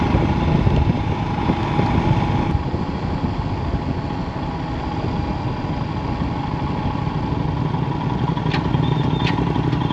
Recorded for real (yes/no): yes